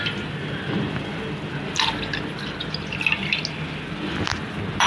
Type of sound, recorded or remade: recorded